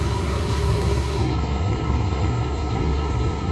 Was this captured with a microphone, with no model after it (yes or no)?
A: no